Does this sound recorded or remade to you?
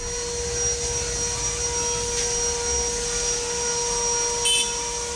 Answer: recorded